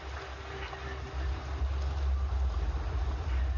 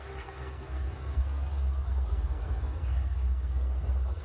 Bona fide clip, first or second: first